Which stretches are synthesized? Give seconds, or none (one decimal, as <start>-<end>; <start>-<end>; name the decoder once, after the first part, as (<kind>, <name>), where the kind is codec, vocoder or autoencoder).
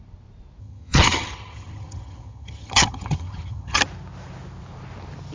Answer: 0.6-3.8 (vocoder, HiFi-GAN)